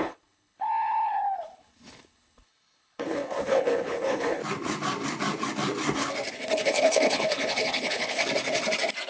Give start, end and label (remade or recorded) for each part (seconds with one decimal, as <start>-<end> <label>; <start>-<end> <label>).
0.0-4.4 remade; 4.4-6.3 recorded; 6.3-8.2 remade; 8.2-9.1 recorded